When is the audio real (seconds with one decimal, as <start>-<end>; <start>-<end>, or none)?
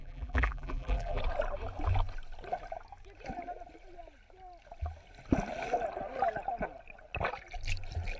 1.2-8.2